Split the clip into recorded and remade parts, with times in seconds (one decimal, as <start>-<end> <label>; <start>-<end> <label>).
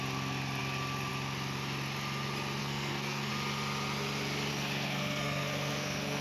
0.0-2.6 recorded; 2.6-3.3 remade; 3.3-4.5 recorded; 4.5-6.2 remade